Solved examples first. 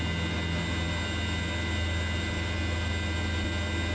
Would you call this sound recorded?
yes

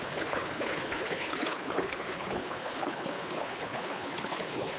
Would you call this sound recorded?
no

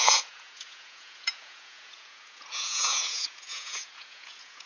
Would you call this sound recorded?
no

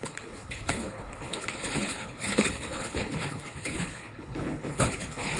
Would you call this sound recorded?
no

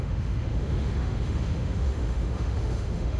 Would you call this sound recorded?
no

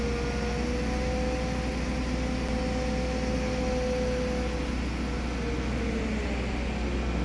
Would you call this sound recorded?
yes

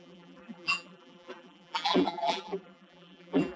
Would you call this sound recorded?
no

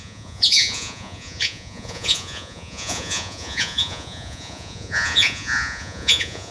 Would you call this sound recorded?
no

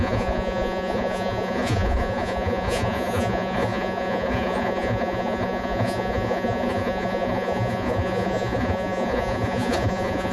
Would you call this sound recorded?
no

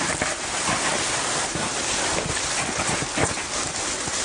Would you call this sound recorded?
yes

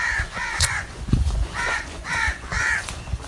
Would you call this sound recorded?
no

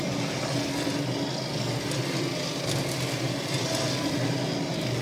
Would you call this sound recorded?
yes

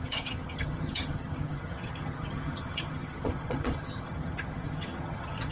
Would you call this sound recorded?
no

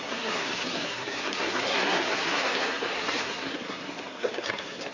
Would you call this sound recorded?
no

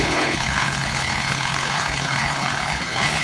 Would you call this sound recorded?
no